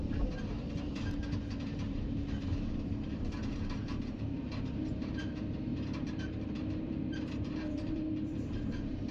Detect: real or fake fake